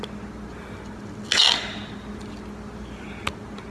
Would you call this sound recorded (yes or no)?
yes